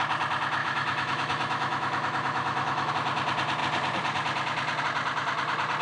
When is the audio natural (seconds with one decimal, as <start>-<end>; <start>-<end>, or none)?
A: 0.0-0.6; 2.9-5.8